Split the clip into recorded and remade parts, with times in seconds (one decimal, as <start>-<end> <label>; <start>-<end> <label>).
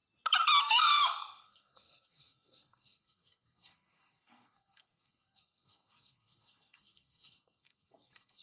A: 0.0-0.6 recorded; 0.6-8.4 remade